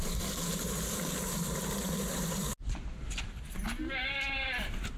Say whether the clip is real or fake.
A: real